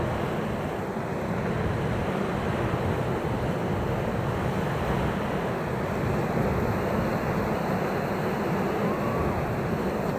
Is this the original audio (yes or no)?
yes